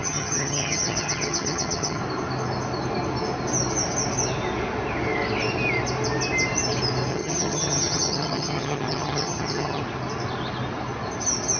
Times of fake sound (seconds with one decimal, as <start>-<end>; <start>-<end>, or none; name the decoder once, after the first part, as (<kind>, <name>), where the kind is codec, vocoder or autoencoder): 0.0-2.0 (vocoder, HiFi-GAN); 7.1-9.8